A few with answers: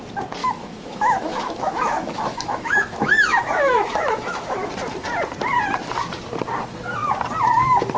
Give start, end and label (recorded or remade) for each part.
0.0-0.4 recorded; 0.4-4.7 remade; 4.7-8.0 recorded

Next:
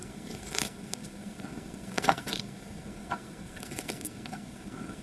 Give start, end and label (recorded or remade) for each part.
0.0-5.0 remade

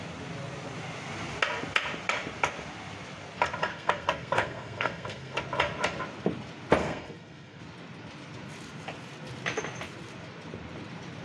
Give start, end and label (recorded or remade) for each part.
0.0-3.7 recorded; 3.7-5.4 remade; 5.4-6.8 recorded; 6.8-7.6 remade; 7.6-11.2 recorded

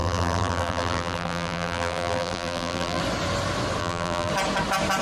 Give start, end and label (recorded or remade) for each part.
0.0-3.0 remade; 3.0-3.8 recorded; 3.8-4.3 remade; 4.3-5.0 recorded

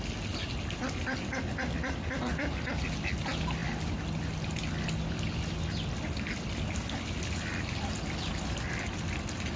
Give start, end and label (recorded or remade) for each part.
0.0-9.6 recorded

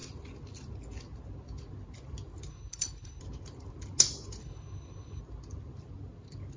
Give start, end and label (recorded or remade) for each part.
0.0-2.5 recorded; 2.5-3.2 remade; 3.2-4.4 recorded; 4.4-5.2 remade; 5.2-6.6 recorded